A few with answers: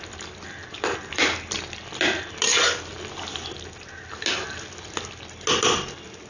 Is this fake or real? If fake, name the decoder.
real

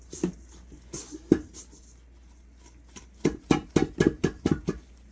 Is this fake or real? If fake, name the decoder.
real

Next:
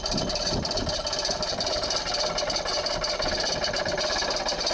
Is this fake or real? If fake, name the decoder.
real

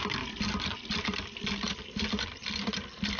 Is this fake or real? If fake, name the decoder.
real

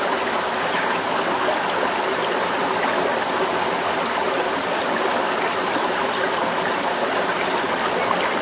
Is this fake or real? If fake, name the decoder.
real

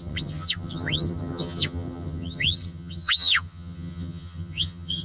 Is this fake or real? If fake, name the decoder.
fake, vocoder, HiFi-GAN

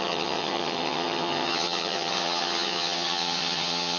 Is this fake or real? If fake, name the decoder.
fake, vocoder, HiFi-GAN